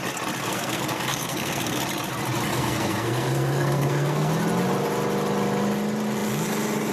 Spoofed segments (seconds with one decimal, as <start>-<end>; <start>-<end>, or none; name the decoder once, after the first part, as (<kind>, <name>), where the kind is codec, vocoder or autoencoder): 0.4-1.8 (codec, SNAC); 2.5-4.3